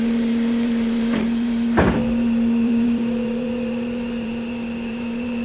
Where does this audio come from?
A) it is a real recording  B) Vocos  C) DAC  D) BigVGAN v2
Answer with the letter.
D